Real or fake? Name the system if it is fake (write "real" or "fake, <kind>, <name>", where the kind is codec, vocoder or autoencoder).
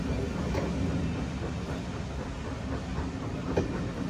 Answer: real